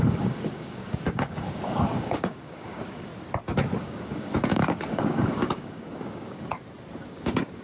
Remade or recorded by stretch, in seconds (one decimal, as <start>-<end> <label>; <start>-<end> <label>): 0.0-3.1 remade; 3.1-3.8 recorded; 3.8-6.5 remade; 6.5-7.1 recorded; 7.1-7.6 remade